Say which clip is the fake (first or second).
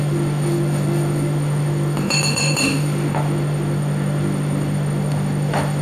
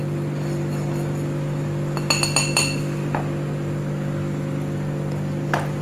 first